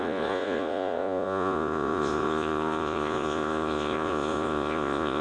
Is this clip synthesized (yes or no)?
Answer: yes